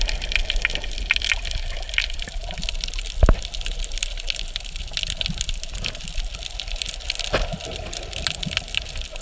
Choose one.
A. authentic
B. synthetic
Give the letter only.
A